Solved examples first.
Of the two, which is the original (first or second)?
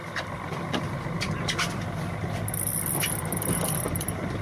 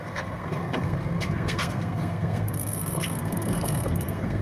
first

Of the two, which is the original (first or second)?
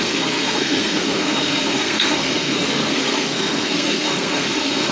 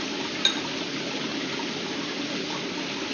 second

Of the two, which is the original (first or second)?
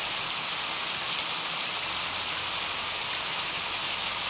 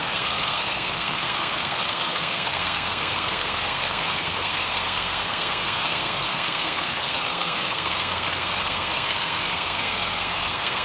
first